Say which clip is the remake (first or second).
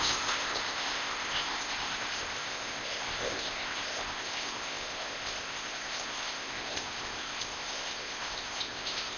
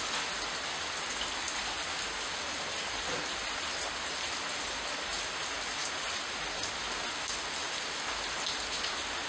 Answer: first